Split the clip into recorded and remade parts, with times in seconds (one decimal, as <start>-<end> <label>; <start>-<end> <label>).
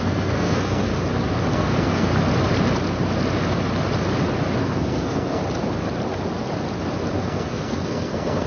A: 0.0-0.9 remade; 0.9-1.5 recorded; 1.5-2.1 remade; 2.1-4.6 recorded; 4.6-5.4 remade; 5.4-7.1 recorded; 7.1-8.5 remade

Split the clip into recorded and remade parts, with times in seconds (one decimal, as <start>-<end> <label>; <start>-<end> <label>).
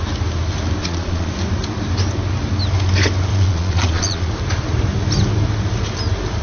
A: 0.0-0.8 recorded; 0.8-1.3 remade; 1.3-3.3 recorded; 3.3-4.3 remade; 4.3-6.4 recorded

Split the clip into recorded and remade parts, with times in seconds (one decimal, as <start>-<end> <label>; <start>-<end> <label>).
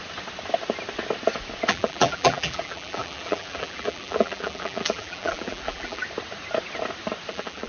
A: 0.0-1.7 recorded; 1.7-6.0 remade; 6.0-7.3 recorded; 7.3-7.7 remade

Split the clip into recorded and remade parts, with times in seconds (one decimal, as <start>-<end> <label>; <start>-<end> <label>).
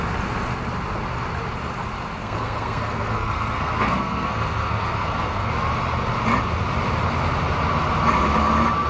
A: 0.0-2.2 recorded; 2.2-5.5 remade; 5.5-8.9 recorded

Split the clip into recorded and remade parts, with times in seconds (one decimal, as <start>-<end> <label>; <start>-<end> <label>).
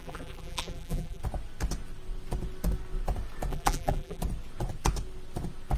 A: 0.0-1.2 remade; 1.2-3.5 recorded; 3.5-4.2 remade; 4.2-5.8 recorded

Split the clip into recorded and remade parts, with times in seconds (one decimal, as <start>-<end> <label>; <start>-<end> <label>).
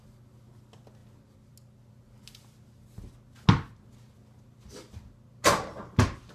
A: 0.0-6.3 recorded